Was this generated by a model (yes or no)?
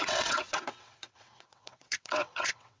yes